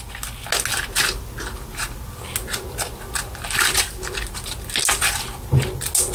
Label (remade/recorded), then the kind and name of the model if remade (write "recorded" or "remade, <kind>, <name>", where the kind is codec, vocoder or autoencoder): recorded